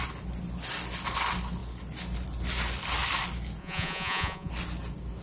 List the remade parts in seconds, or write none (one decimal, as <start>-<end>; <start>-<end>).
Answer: 3.6-4.5